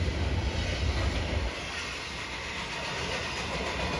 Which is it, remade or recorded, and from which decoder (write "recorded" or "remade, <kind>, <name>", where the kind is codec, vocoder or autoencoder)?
recorded